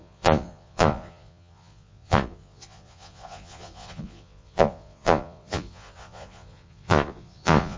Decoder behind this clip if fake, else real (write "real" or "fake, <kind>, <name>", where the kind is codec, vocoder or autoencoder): fake, vocoder, Vocos